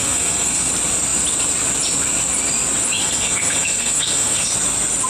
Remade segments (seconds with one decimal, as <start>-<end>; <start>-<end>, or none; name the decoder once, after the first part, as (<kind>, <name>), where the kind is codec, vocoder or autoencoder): 0.0-0.7 (codec, SNAC); 3.0-4.5